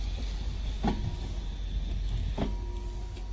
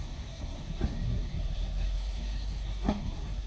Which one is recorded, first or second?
first